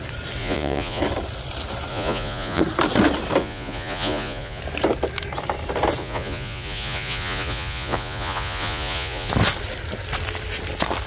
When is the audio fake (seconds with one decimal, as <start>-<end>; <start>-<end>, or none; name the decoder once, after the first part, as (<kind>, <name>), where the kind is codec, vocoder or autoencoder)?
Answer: 0.4-1.0 (vocoder, Vocos); 1.9-2.6; 3.4-4.6; 6.0-9.3